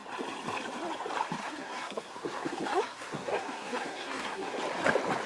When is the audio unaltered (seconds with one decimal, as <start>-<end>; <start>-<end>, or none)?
0.0-1.4; 4.6-5.3